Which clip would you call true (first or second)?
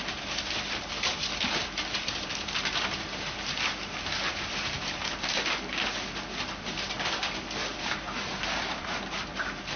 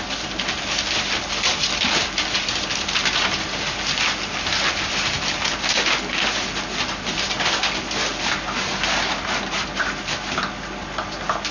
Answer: second